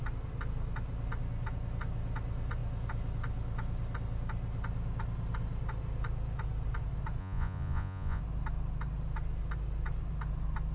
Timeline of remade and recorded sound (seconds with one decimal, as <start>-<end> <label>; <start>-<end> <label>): 0.0-7.2 recorded; 7.2-8.2 remade; 8.2-10.7 recorded